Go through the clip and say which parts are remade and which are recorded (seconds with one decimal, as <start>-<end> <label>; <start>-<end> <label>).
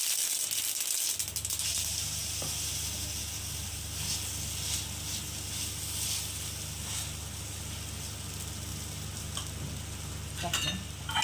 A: 0.0-11.2 recorded